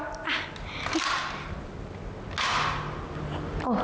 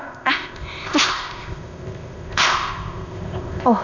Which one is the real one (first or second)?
first